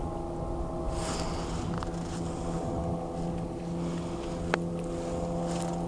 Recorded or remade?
recorded